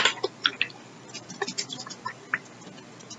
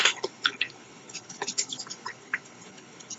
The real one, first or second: first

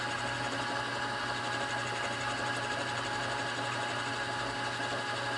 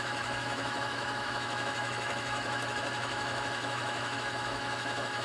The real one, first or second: first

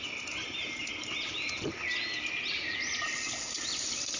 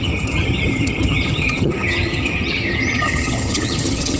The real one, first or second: first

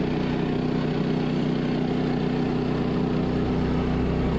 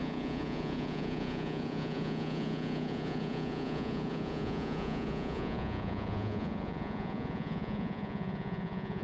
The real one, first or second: first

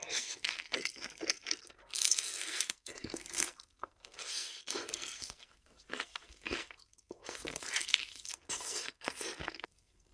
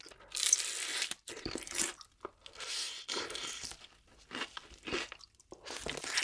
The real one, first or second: second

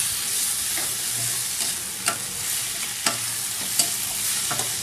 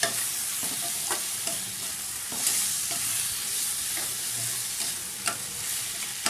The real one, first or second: first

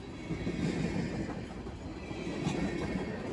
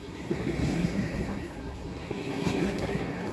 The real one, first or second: first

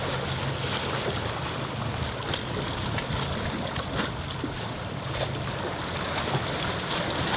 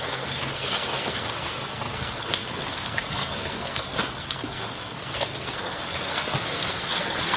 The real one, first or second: first